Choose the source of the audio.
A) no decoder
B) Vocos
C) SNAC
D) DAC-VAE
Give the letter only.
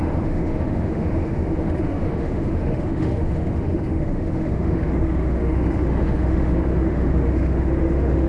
D